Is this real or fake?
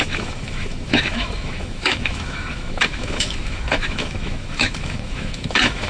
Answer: fake